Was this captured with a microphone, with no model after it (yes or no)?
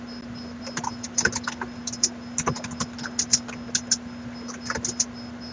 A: yes